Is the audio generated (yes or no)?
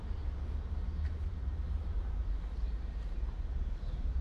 yes